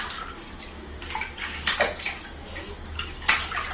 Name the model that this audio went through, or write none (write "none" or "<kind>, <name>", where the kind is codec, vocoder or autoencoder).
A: none